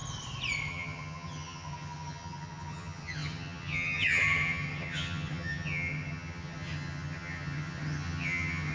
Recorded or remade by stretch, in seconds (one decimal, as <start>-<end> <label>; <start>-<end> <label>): 0.0-0.7 recorded; 0.7-8.7 remade